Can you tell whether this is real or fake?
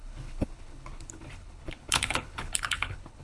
fake